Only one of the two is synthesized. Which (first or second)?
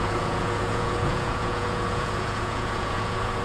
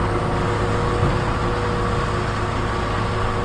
first